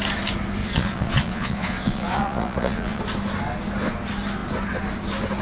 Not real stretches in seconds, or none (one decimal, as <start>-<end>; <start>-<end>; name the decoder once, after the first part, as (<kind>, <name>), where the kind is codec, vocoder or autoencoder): 0.6-3.0 (vocoder, Vocos)